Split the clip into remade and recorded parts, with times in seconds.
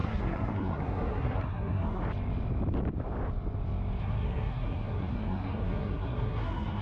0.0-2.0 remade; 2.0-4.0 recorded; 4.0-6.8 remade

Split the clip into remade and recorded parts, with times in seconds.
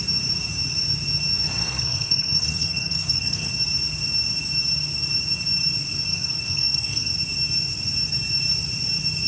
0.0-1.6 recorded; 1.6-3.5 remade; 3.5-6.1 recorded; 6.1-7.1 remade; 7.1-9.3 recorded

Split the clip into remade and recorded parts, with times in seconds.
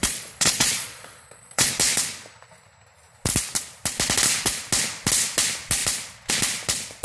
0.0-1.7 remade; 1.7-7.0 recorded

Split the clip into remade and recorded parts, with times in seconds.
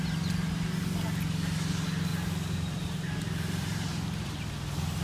0.0-2.1 recorded; 2.1-4.5 remade; 4.5-5.0 recorded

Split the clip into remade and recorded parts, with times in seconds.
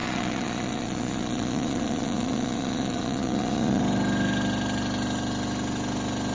0.0-3.8 remade; 3.8-6.3 recorded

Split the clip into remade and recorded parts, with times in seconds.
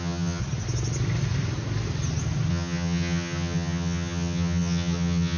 0.0-0.4 remade; 0.4-2.5 recorded; 2.5-5.4 remade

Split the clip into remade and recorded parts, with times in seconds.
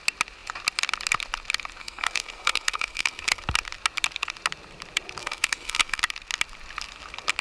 0.0-1.8 recorded; 1.8-3.4 remade; 3.4-5.2 recorded; 5.2-6.0 remade; 6.0-7.4 recorded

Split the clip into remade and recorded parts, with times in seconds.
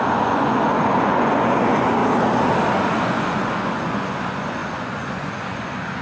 0.0-2.0 remade; 2.0-2.9 recorded; 2.9-6.0 remade